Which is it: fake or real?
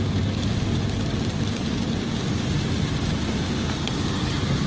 real